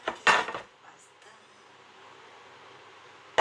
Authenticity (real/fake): real